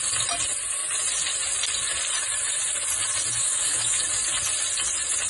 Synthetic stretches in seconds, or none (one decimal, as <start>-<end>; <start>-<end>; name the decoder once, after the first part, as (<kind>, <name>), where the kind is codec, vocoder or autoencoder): 3.4-4.0 (autoencoder, DAC-VAE)